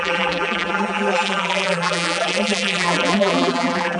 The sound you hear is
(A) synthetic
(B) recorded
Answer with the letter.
A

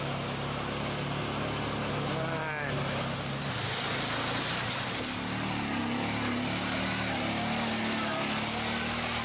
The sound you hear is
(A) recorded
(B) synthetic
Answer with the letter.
A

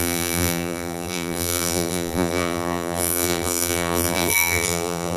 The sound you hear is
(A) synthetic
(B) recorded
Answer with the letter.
A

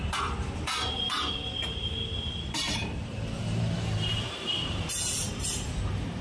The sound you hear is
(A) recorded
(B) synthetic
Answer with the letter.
B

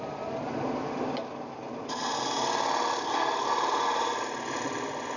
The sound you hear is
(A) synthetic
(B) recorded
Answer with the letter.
B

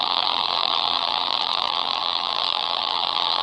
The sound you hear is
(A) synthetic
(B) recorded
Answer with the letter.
A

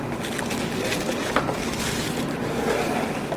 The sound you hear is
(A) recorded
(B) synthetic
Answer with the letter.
A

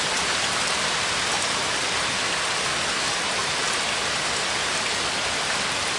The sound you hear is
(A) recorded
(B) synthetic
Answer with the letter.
A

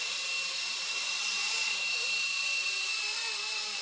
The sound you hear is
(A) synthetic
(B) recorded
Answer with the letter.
B